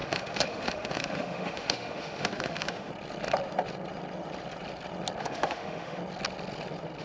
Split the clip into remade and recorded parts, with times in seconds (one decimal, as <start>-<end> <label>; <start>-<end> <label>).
0.0-2.9 remade; 2.9-5.2 recorded; 5.2-6.0 remade; 6.0-7.0 recorded

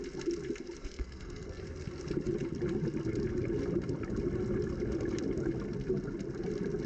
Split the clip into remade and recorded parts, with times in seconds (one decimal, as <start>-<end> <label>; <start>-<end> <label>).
0.0-0.8 recorded; 0.8-1.6 remade; 1.6-6.9 recorded

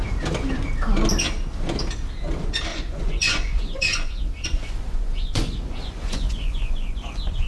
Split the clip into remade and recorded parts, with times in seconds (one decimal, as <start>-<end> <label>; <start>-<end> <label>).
0.0-2.7 recorded; 2.7-7.5 remade

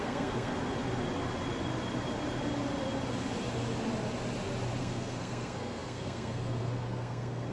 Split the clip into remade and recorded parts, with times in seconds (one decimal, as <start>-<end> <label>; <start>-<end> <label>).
0.0-0.5 remade; 0.5-4.8 recorded; 4.8-7.5 remade

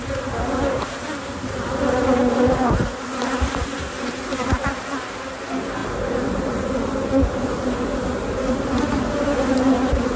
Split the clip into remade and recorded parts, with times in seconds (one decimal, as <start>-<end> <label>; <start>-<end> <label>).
0.0-10.2 recorded

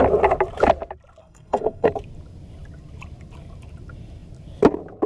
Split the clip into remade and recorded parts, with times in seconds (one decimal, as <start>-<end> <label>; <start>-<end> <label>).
0.0-1.2 recorded; 1.2-1.9 remade; 1.9-5.1 recorded